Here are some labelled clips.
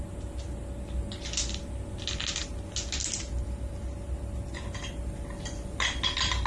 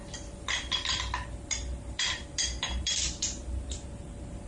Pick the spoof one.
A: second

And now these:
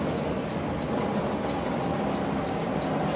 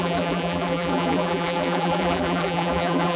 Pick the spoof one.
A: second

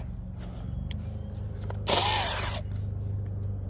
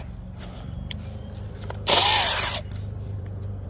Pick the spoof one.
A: second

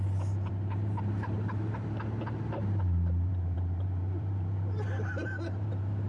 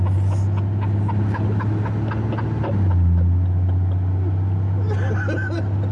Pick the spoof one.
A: first